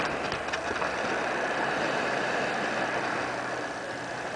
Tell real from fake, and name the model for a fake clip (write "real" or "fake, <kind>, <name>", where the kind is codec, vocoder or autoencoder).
real